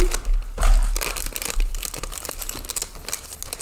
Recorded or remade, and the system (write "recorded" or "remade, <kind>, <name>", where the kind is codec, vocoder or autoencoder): recorded